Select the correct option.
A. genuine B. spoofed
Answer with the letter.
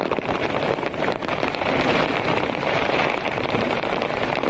B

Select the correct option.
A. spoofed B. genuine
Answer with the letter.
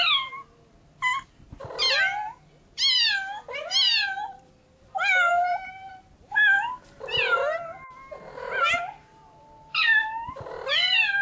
B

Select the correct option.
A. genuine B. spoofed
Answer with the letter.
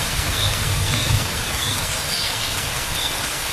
B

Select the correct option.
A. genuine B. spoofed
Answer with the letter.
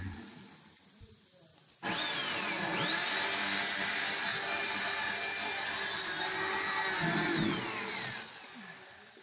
A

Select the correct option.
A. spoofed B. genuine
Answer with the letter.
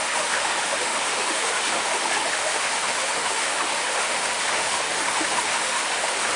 A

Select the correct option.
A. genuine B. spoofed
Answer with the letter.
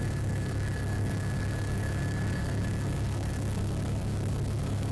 B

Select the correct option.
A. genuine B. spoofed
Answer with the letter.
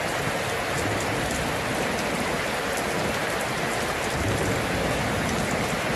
A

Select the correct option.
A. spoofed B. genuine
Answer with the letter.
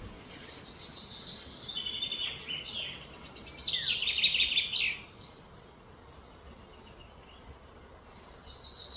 B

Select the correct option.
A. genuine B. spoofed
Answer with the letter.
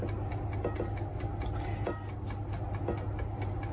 A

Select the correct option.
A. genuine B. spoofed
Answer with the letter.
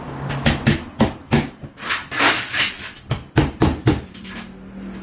A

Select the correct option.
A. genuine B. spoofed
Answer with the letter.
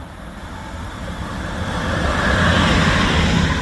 A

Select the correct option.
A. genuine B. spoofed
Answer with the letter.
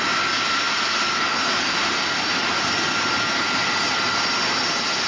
A